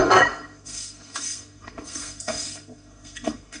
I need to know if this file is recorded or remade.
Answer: remade